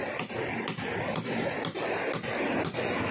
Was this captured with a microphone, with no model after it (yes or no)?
yes